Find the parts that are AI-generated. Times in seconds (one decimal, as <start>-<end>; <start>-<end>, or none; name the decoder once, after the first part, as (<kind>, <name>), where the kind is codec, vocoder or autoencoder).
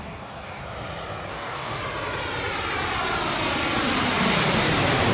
0.0-0.6 (codec, DAC); 1.3-1.8